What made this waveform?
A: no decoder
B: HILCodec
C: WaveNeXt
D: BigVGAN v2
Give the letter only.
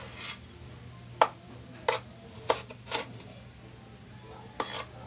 A